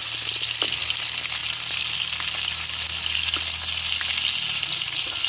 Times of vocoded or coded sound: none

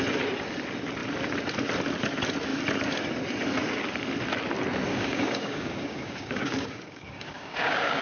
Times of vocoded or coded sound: 4.9-8.0

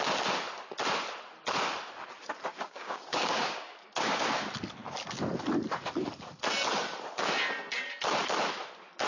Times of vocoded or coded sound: 2.5-4.2

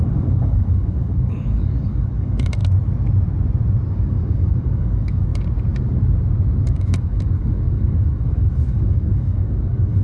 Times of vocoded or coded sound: 0.0-2.6; 3.9-5.3; 6.6-10.0

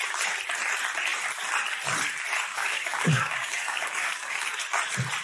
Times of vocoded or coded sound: 2.5-4.6

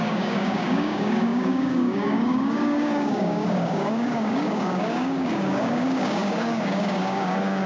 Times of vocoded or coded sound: 0.0-7.7